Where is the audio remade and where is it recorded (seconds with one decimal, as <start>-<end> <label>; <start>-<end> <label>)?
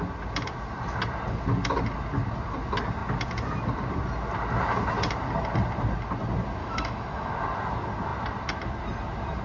0.0-6.6 recorded; 6.6-7.3 remade; 7.3-9.4 recorded